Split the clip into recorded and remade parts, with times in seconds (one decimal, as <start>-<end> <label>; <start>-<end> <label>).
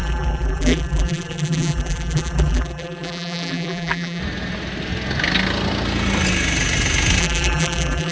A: 0.0-4.2 remade; 4.2-7.2 recorded; 7.2-8.1 remade